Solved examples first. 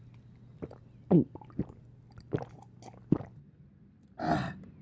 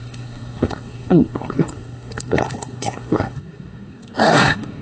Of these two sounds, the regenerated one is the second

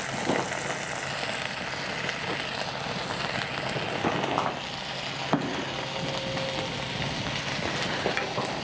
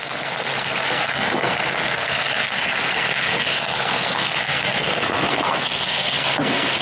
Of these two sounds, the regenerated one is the second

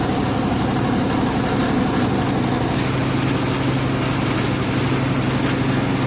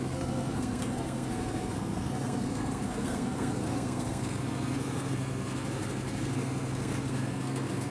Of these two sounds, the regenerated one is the second